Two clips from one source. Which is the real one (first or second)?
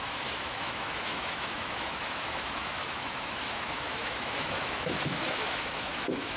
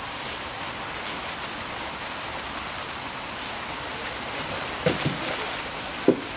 second